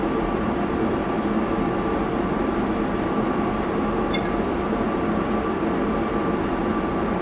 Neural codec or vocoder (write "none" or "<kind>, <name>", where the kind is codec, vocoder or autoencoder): none